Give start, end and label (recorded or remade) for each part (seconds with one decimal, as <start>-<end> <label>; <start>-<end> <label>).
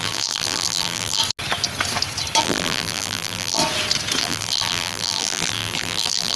0.0-1.2 remade; 1.2-2.4 recorded; 2.4-3.6 remade; 3.6-4.2 recorded; 4.2-6.4 remade